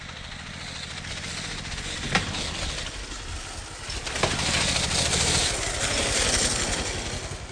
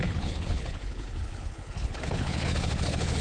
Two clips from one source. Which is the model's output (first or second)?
second